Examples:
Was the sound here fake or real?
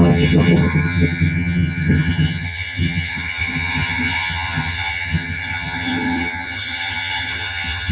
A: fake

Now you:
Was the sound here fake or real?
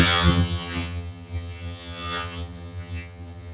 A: fake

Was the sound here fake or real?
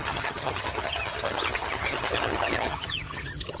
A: fake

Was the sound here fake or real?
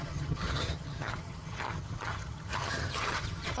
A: fake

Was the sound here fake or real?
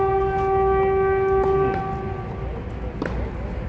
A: real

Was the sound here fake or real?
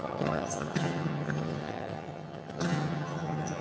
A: fake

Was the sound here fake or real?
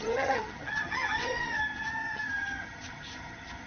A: fake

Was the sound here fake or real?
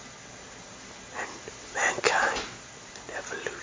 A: real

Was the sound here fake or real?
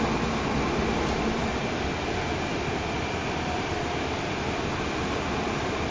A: real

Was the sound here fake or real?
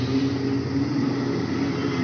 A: real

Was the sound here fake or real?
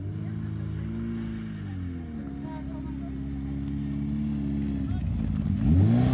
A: real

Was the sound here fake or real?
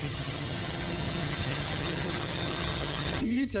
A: fake